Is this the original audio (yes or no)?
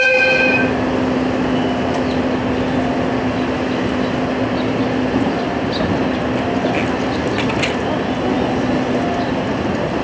yes